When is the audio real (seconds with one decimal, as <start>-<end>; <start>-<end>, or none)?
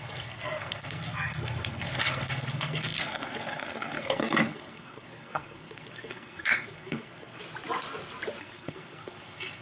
7.4-8.4